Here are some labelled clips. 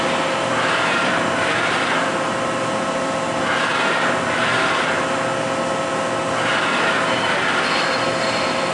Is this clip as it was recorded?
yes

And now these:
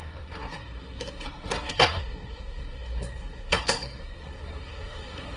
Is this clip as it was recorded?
no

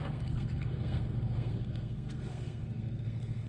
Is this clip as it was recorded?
no